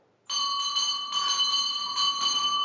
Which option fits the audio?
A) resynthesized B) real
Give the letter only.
B